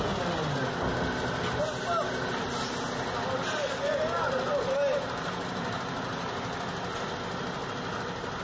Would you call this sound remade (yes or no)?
no